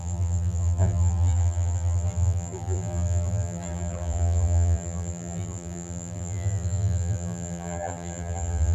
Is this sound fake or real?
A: fake